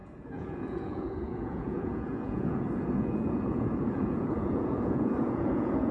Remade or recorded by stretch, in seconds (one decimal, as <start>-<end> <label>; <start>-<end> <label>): 0.0-5.9 remade